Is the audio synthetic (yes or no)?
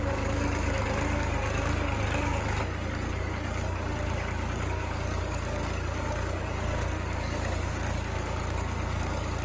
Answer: yes